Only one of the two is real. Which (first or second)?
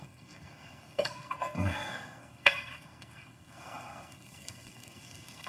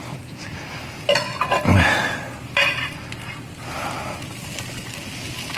second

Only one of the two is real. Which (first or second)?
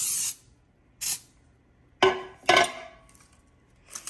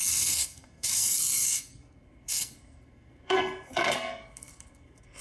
first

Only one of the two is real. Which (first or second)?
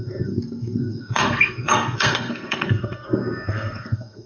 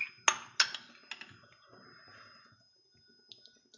second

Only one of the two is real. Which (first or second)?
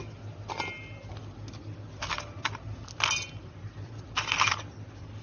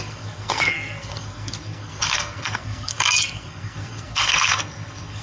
first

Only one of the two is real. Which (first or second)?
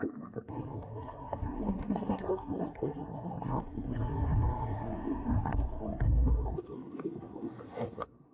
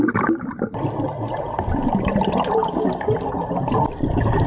second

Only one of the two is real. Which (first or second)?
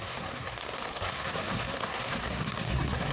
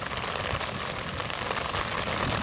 second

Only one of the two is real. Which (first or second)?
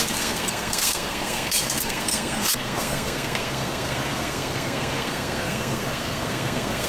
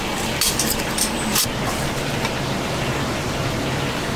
second